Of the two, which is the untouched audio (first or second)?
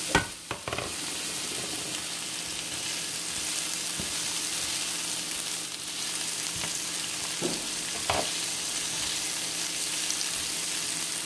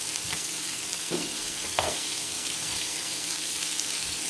first